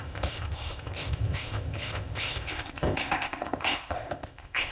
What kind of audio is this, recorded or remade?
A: remade